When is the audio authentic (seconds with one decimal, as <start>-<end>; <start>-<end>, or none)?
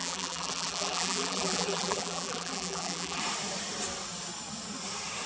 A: 3.2-5.3